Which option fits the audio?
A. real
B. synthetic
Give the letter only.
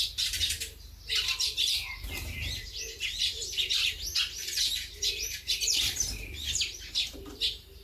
B